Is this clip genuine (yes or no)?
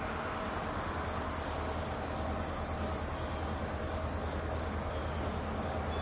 yes